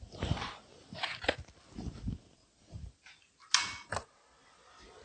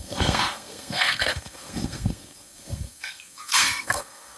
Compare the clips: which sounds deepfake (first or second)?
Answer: second